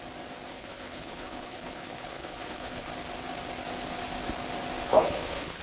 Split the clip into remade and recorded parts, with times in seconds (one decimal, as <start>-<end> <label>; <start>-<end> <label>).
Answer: 0.0-0.5 recorded; 0.5-2.9 remade; 2.9-4.9 recorded; 4.9-5.6 remade

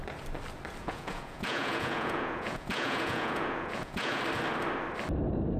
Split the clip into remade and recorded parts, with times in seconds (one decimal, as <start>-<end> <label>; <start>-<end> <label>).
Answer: 0.0-0.8 recorded; 0.8-4.2 remade; 4.2-5.6 recorded

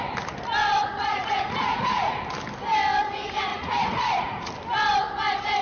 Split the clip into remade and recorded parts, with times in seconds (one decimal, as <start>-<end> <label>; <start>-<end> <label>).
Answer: 0.0-0.8 recorded; 0.8-2.2 remade; 2.2-3.5 recorded; 3.5-4.5 remade; 4.5-5.6 recorded

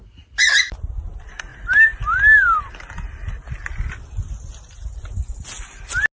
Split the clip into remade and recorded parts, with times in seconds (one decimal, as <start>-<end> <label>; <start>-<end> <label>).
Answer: 0.0-6.1 recorded

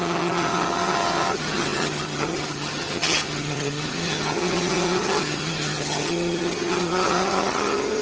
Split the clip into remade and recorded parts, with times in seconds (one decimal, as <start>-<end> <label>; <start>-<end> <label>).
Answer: 0.0-8.0 remade